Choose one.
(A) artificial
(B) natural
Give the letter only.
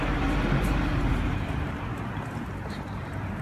A